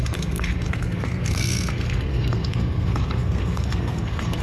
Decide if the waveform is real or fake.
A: fake